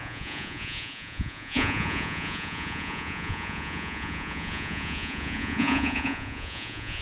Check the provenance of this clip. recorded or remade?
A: remade